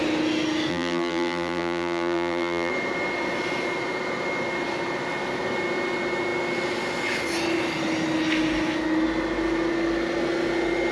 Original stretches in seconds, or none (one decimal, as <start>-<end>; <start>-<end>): 0.0-0.7; 2.7-10.9